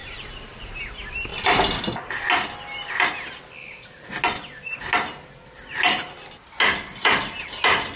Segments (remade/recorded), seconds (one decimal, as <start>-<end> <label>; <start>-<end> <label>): 0.0-0.8 remade; 0.8-1.3 recorded; 1.3-2.0 remade; 2.0-8.0 recorded